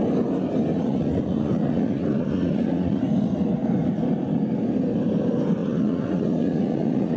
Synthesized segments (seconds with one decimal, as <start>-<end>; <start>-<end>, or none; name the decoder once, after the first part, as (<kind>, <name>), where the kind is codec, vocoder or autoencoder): 0.7-3.0 (vocoder, Vocos); 5.6-7.2